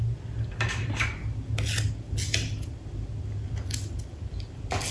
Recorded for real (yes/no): yes